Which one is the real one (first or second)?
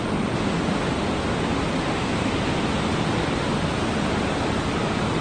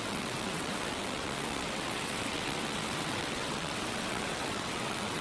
first